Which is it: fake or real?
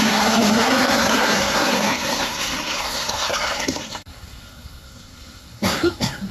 fake